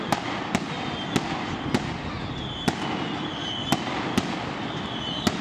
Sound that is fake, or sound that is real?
real